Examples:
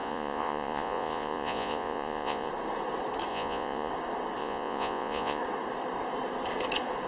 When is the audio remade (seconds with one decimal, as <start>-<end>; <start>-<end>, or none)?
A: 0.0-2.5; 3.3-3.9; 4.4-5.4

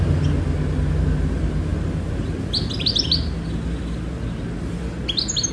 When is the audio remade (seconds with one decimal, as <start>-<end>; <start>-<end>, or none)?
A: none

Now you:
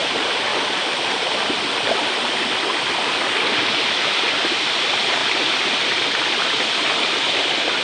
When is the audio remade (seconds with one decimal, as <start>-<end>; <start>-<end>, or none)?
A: 0.0-0.5; 4.5-5.2

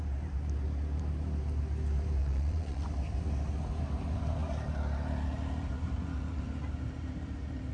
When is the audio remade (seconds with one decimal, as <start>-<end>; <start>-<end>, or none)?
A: 2.2-2.8

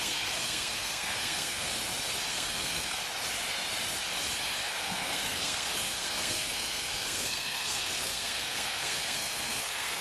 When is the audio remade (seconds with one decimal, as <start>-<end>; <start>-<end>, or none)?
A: 0.0-1.7; 2.3-3.0; 4.8-10.0